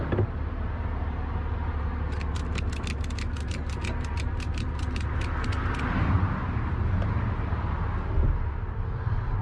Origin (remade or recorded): recorded